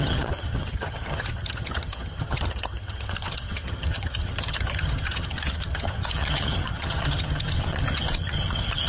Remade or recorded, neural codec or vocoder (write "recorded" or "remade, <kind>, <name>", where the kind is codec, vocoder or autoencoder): remade, vocoder, HiFi-GAN